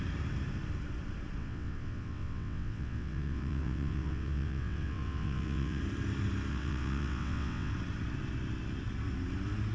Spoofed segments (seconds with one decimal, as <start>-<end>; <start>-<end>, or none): 1.4-5.8; 6.5-7.7